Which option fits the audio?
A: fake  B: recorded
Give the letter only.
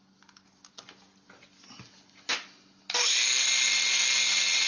B